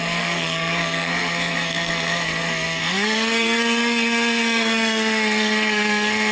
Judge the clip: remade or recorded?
remade